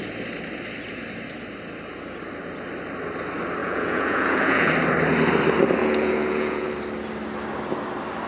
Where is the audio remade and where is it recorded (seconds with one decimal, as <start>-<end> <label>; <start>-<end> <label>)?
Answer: 0.0-3.6 recorded; 3.6-4.7 remade; 4.7-5.8 recorded; 5.8-6.7 remade; 6.7-8.3 recorded